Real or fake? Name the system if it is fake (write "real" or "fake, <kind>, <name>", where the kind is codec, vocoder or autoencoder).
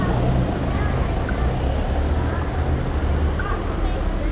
real